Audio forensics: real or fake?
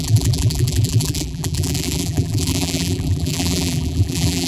fake